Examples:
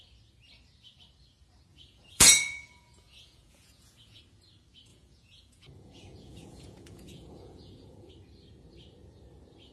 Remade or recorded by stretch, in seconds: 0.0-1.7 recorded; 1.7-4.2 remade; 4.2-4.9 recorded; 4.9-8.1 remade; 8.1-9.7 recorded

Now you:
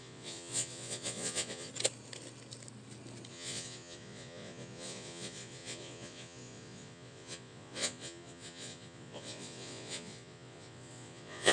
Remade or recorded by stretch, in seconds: 0.0-1.7 remade; 1.7-3.3 recorded; 3.3-11.5 remade

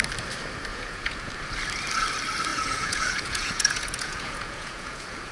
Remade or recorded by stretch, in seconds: 0.0-0.7 recorded; 0.7-1.3 remade; 1.3-2.5 recorded; 2.5-5.3 remade

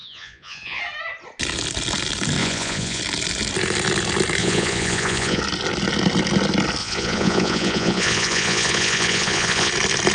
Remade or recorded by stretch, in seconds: 0.0-0.8 remade; 0.8-2.4 recorded; 2.4-3.0 remade; 3.0-4.4 recorded; 4.4-5.4 remade; 5.4-6.8 recorded; 6.8-9.7 remade; 9.7-10.1 recorded

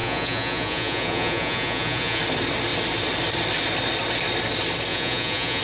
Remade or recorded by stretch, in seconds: 0.0-2.2 remade; 2.2-4.9 recorded; 4.9-5.6 remade

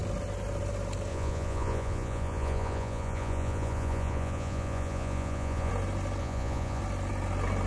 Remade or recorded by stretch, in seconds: 0.0-1.1 recorded; 1.1-5.7 remade; 5.7-6.2 recorded; 6.2-6.8 remade; 6.8-7.7 recorded